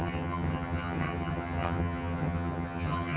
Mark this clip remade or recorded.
remade